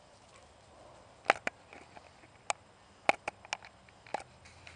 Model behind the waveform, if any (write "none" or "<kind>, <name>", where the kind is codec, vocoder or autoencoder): none